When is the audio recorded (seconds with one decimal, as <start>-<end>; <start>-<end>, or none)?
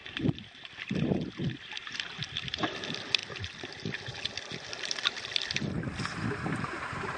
0.0-6.1